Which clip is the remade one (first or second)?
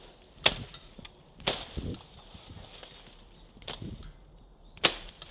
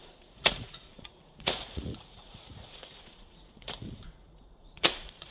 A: second